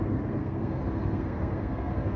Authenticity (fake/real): fake